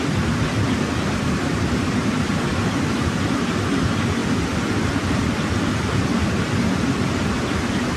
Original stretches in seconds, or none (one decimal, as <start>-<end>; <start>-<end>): 0.0-8.0